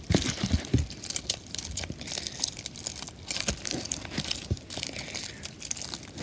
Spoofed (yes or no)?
no